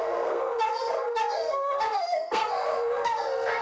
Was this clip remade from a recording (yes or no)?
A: yes